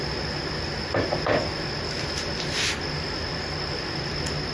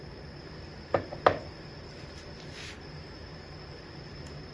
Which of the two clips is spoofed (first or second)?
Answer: second